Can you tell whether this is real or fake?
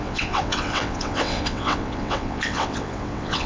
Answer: fake